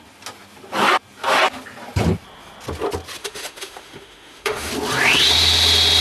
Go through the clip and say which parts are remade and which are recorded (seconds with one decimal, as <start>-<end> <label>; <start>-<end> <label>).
0.0-3.2 recorded; 3.2-4.7 remade; 4.7-6.0 recorded